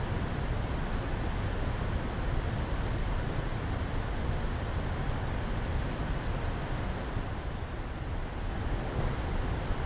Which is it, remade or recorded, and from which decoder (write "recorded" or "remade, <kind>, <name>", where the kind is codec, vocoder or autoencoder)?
recorded